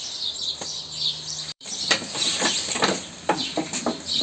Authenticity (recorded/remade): remade